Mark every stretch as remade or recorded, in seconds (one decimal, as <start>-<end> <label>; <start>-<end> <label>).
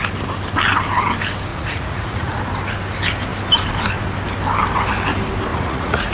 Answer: 0.0-1.5 recorded; 1.5-2.4 remade; 2.4-5.5 recorded; 5.5-6.1 remade